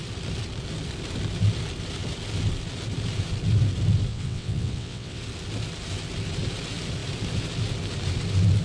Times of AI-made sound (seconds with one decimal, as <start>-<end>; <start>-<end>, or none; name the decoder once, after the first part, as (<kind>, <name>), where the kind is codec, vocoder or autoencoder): 4.1-5.2 (vocoder, WaveNeXt)